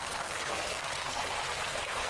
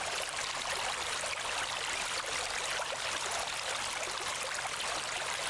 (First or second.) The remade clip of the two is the first